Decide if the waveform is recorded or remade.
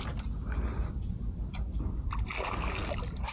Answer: recorded